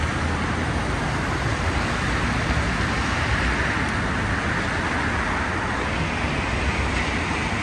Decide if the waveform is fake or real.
real